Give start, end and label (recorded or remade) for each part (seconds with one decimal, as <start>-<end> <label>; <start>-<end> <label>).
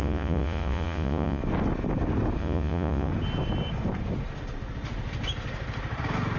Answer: 0.0-1.4 remade; 1.4-2.4 recorded; 2.4-3.1 remade; 3.1-6.4 recorded